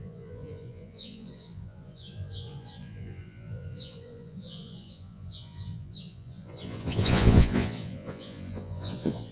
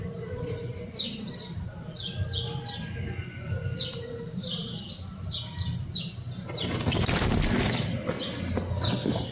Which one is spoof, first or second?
first